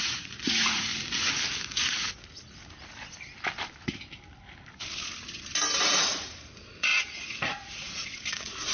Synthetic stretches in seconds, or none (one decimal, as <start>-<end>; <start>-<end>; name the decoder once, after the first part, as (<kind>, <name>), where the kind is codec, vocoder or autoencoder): 0.0-0.9 (vocoder, Vocos); 5.8-8.7